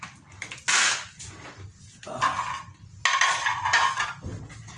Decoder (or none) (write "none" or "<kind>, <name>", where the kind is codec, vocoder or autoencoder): none